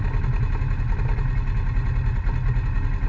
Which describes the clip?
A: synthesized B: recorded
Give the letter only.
B